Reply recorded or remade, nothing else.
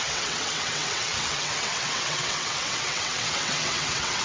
remade